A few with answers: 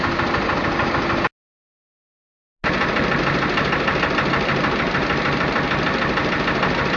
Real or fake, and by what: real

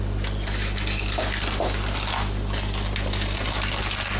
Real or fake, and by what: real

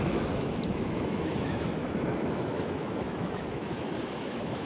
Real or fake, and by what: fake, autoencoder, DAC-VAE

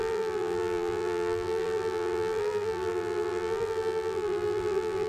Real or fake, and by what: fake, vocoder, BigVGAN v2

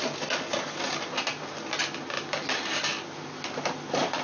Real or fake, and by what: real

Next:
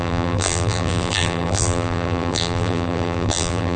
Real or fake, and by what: fake, vocoder, BigVGAN v2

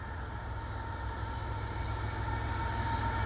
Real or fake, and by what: real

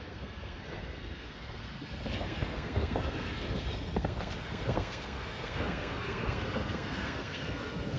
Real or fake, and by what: fake, codec, SNAC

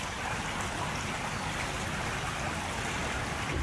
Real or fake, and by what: real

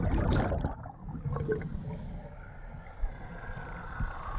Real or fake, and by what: real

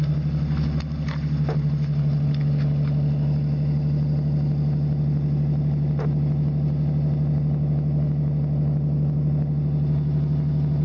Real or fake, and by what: real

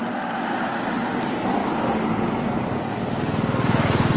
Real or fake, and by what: real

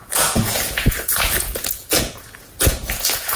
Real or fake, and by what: fake, vocoder, Vocos